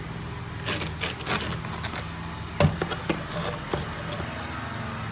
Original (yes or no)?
yes